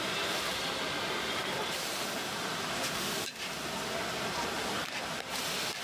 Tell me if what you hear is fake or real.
fake